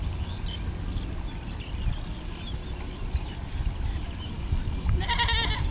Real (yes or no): yes